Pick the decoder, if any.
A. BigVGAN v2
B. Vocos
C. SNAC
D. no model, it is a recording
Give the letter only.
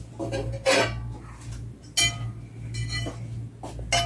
D